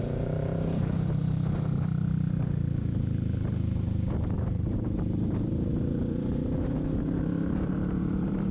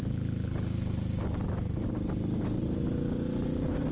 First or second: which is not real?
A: first